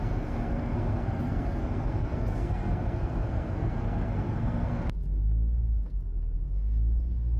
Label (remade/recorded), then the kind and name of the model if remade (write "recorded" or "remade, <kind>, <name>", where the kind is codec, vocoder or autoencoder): remade, codec, SNAC